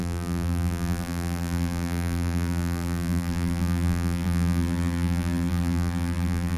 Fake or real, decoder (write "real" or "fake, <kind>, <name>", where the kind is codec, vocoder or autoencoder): fake, vocoder, BigVGAN v2